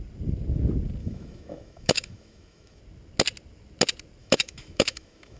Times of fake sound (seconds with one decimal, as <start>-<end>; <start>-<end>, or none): 1.0-2.8; 4.2-5.4

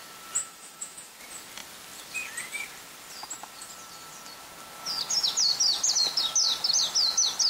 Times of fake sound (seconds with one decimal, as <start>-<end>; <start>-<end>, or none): 0.4-1.2

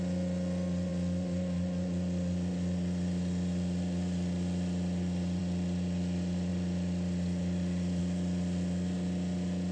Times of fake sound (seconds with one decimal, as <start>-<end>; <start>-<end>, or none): none

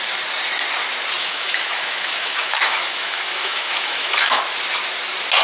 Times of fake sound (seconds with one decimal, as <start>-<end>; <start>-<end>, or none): 1.2-4.4

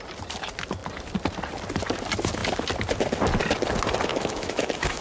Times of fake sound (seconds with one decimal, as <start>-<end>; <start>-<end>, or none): 4.1-5.0

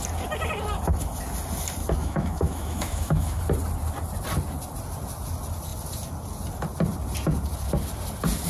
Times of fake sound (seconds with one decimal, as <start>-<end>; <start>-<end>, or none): 2.0-3.4

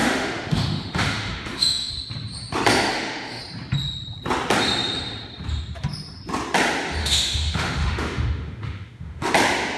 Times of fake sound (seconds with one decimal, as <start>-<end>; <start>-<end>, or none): 0.0-1.9; 2.9-3.4; 7.0-9.3

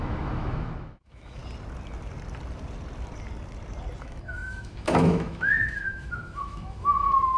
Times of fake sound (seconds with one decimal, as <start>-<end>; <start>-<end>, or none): 0.0-1.4; 4.0-7.4